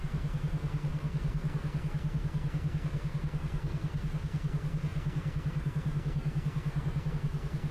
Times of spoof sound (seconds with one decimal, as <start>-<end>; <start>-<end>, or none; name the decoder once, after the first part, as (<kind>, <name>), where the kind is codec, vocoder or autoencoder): 0.0-7.7 (codec, SNAC)